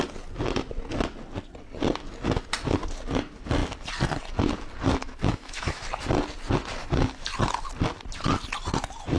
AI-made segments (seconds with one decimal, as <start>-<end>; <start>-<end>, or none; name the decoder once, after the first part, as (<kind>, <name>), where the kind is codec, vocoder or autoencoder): 4.9-5.8 (autoencoder, DAC-VAE)